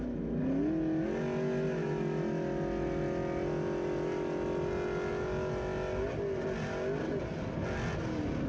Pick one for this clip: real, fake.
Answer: real